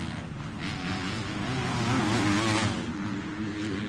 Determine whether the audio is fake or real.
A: real